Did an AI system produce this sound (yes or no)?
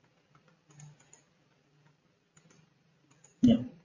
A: no